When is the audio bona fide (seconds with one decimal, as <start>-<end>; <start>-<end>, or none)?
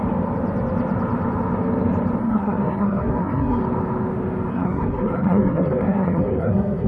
0.0-2.2; 3.6-4.5